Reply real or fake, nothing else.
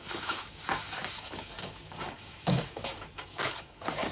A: fake